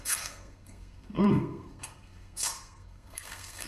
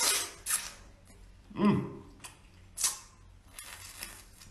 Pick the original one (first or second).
second